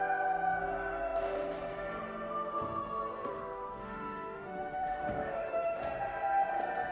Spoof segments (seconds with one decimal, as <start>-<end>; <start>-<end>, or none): 3.3-5.8